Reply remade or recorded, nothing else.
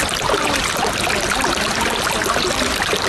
recorded